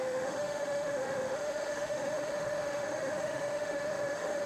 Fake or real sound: fake